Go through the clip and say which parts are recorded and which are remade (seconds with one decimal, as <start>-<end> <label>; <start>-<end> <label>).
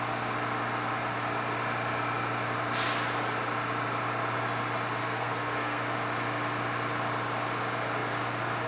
0.0-5.0 recorded; 5.0-5.8 remade; 5.8-8.7 recorded